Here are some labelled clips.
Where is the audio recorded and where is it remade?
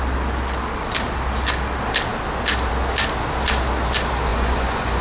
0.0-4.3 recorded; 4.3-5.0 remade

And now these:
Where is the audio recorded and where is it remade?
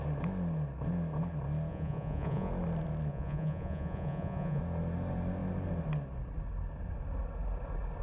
0.0-1.7 recorded; 1.7-2.5 remade; 2.5-3.1 recorded; 3.1-4.6 remade; 4.6-8.0 recorded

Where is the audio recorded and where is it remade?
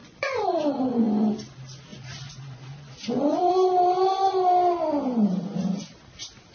0.0-1.2 remade; 1.2-1.9 recorded; 1.9-3.5 remade; 3.5-6.5 recorded